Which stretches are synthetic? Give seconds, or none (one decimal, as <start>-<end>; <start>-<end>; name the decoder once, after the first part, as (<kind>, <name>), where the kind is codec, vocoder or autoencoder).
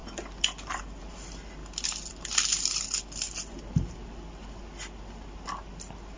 0.0-1.0 (vocoder, BigVGAN v2); 1.6-5.3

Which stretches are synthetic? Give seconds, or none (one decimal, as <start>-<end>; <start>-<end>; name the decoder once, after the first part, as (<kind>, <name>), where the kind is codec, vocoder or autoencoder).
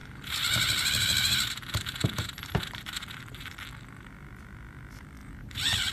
0.0-3.5 (vocoder, BigVGAN v2); 5.2-5.9